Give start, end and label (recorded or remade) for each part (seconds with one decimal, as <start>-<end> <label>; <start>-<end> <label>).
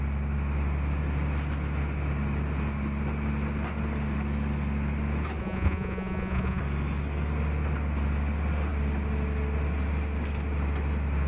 0.0-5.4 recorded; 5.4-6.6 remade; 6.6-11.3 recorded